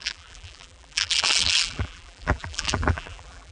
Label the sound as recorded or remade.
remade